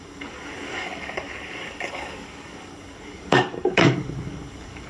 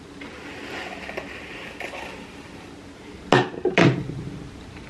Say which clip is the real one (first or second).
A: second